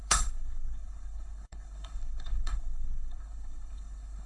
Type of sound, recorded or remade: remade